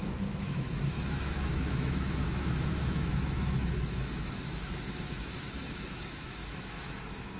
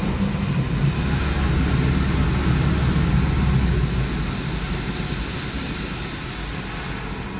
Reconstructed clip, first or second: first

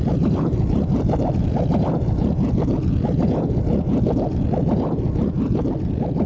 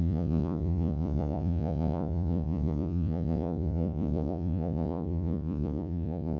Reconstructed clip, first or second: second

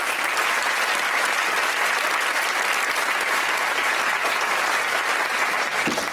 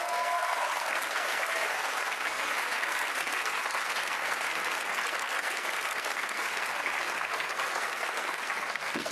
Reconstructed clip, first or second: second